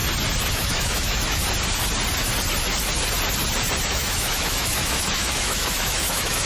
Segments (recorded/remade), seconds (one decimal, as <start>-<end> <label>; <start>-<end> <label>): 0.0-0.5 recorded; 0.5-1.4 remade; 1.4-3.8 recorded; 3.8-6.5 remade